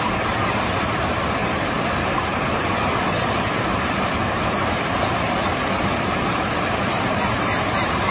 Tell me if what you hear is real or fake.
real